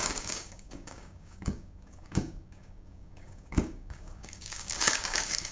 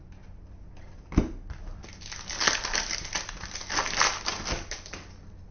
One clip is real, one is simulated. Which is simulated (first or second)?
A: first